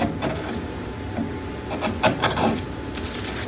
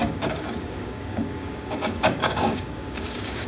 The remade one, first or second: second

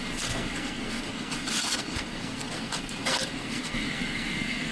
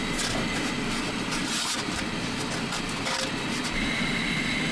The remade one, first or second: first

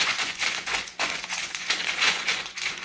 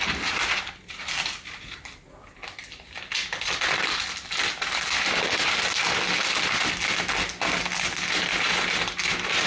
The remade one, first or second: first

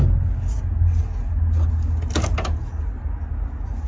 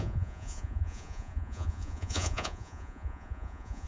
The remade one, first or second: second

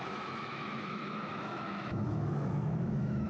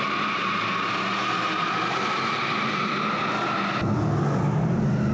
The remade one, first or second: first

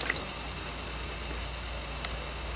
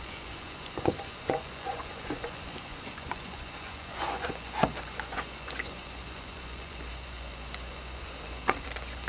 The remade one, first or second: second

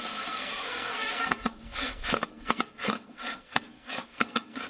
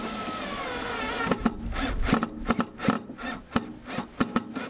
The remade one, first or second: first